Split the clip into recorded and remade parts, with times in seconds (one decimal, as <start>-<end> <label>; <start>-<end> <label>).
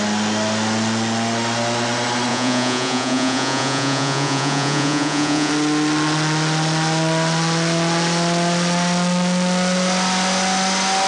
0.0-2.3 recorded; 2.3-5.5 remade; 5.5-11.1 recorded